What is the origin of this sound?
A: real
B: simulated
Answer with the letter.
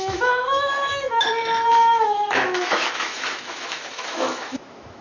B